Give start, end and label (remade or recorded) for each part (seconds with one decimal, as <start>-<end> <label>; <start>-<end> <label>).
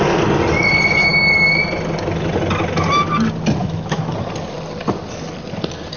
0.0-3.6 recorded; 3.6-4.1 remade; 4.1-6.0 recorded